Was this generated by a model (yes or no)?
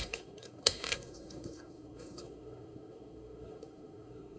yes